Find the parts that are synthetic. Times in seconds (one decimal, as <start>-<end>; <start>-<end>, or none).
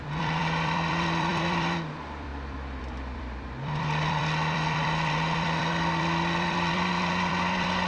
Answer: 0.0-7.9